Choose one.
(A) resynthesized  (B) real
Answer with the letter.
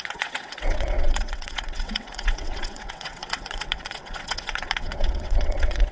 A